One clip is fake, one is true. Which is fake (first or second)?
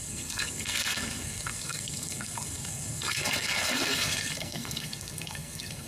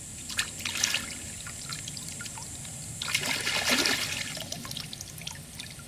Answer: first